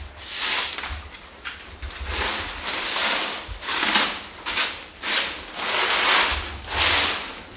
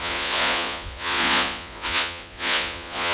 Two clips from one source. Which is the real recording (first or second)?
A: first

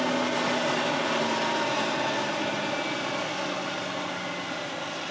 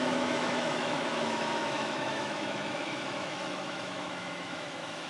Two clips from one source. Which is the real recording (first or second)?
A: first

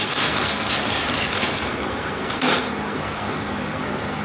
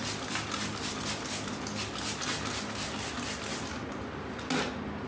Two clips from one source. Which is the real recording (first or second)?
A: second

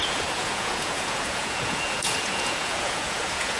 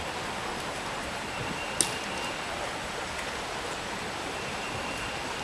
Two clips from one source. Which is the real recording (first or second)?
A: second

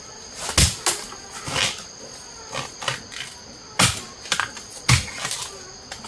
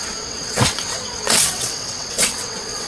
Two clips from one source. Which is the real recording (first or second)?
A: first